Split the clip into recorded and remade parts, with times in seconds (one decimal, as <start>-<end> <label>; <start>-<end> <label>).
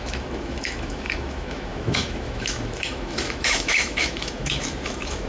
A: 0.0-5.3 remade